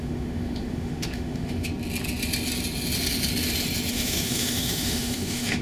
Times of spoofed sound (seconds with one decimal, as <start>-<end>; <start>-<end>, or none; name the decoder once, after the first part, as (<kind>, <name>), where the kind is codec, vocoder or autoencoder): 0.0-1.7 (autoencoder, DAC-VAE); 3.9-5.6